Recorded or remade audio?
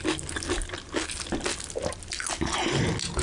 recorded